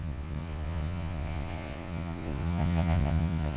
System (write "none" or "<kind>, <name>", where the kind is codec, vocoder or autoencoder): vocoder, Vocos